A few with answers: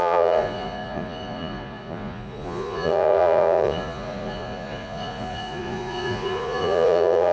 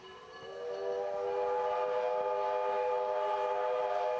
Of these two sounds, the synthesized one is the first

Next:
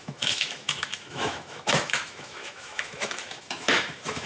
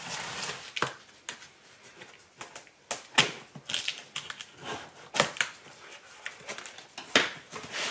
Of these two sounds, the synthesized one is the first